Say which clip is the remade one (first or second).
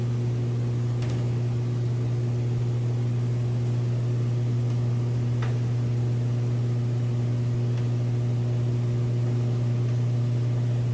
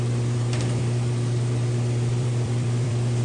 second